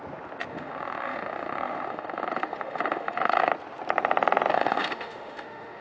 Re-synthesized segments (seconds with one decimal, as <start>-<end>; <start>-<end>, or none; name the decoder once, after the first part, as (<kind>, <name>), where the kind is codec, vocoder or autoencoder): 0.5-3.5 (autoencoder, DAC-VAE); 4.5-5.8